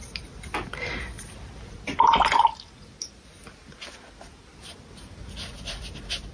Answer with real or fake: real